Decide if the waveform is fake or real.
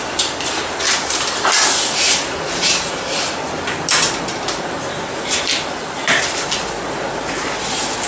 real